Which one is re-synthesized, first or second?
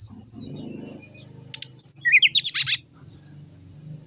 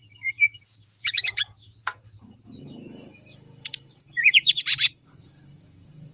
second